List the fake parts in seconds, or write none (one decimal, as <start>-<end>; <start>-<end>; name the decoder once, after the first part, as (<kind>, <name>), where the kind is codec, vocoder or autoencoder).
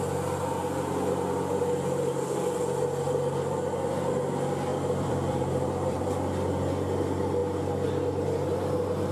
4.7-6.0 (vocoder, BigVGAN v2)